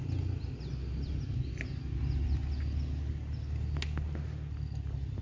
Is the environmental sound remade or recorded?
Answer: recorded